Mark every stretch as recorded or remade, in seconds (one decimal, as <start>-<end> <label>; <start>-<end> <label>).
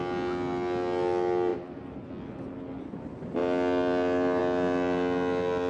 0.0-1.5 recorded; 1.5-2.1 remade; 2.1-5.7 recorded